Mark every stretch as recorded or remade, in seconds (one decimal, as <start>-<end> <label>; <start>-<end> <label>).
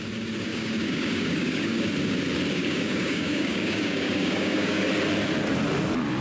0.0-0.5 recorded; 0.5-1.9 remade; 1.9-2.6 recorded; 2.6-4.9 remade; 4.9-6.2 recorded